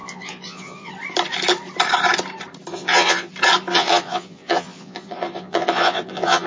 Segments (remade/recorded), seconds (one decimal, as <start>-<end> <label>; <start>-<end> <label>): 0.0-0.9 remade; 0.9-2.7 recorded; 2.7-3.3 remade; 3.3-3.7 recorded; 3.7-6.5 remade